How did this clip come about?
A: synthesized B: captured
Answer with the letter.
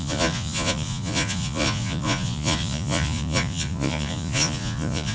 A